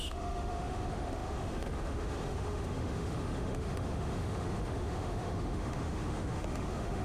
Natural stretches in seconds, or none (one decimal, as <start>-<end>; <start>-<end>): none